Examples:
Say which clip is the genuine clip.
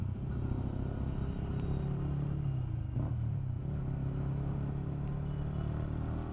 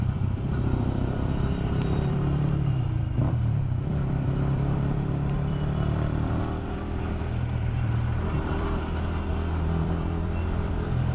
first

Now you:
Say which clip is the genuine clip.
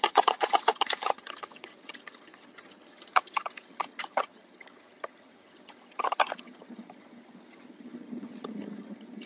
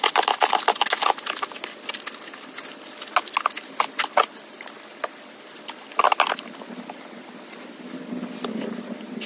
second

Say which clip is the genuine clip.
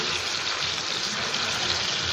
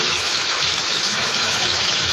first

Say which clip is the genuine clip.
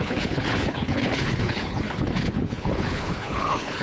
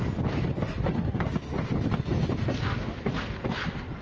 second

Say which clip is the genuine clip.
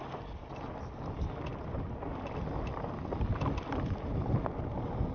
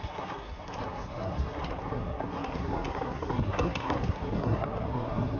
first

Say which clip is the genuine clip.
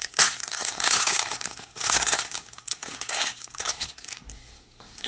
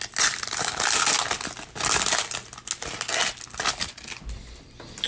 second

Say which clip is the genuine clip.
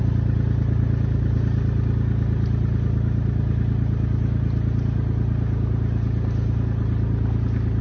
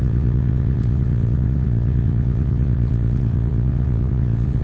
first